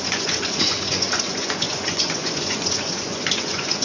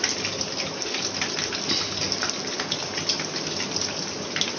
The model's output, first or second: first